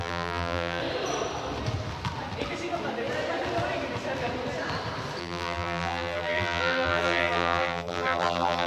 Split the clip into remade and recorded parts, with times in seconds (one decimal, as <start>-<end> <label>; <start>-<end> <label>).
0.0-0.8 remade; 0.8-5.2 recorded; 5.2-8.7 remade